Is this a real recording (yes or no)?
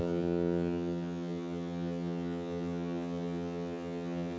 no